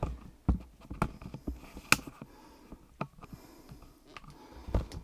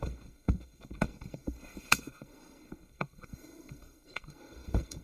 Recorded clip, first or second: first